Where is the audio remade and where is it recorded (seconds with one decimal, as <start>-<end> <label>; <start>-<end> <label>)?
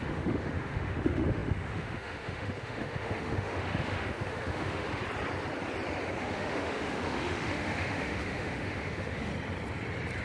0.0-5.0 remade; 5.0-6.2 recorded; 6.2-9.3 remade; 9.3-10.2 recorded